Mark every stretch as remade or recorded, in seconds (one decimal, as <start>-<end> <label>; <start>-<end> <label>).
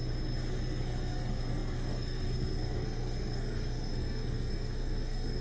0.0-0.5 recorded; 0.5-5.4 remade